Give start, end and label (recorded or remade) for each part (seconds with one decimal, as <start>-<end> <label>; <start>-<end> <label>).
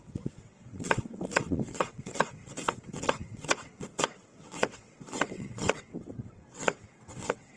0.0-7.6 remade